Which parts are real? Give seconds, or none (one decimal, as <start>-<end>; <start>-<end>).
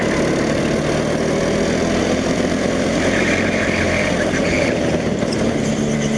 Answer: 0.0-2.0; 5.7-6.2